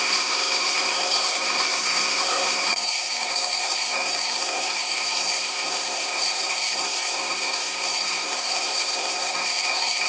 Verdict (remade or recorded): remade